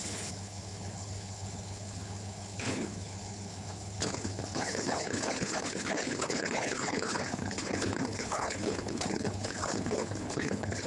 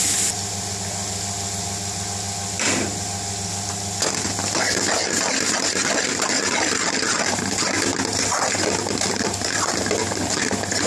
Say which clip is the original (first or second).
second